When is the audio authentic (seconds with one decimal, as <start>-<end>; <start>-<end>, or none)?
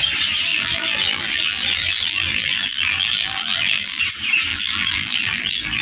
0.0-0.5; 4.0-4.5